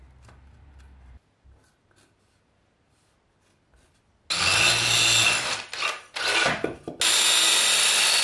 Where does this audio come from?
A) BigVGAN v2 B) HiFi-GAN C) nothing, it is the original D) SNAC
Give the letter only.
C